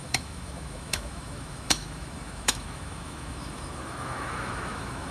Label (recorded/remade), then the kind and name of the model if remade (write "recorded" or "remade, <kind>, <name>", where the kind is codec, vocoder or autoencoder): remade, autoencoder, DAC-VAE